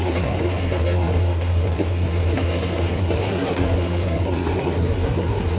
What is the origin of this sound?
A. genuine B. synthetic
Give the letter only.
B